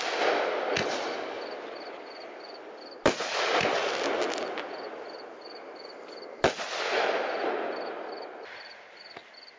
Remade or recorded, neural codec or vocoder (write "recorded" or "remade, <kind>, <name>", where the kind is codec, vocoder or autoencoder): recorded